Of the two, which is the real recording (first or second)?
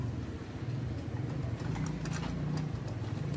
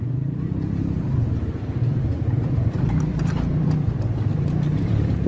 first